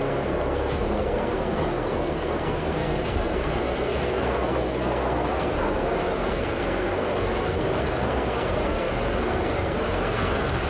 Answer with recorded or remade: remade